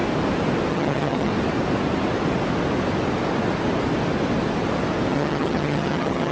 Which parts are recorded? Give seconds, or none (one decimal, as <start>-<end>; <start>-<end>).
0.0-0.7; 1.3-5.1